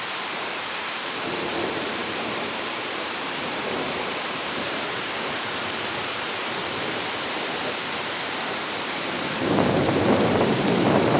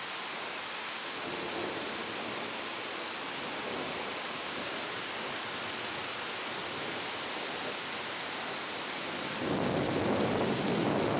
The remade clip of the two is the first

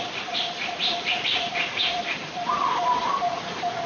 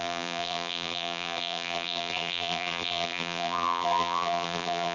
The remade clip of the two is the second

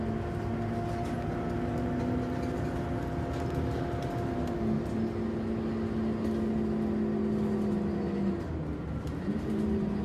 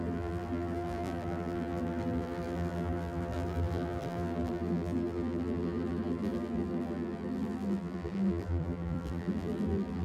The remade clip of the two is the second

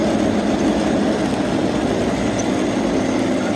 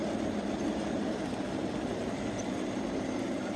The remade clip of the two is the second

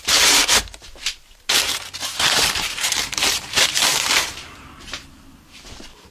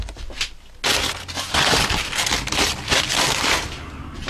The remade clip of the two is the first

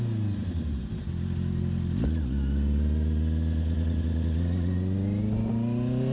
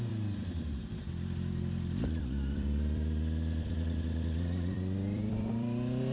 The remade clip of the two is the second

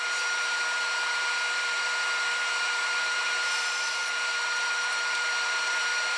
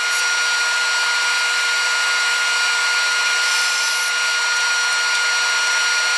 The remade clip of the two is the first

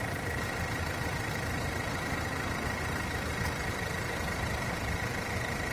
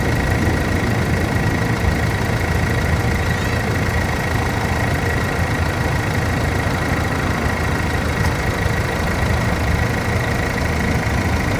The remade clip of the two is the first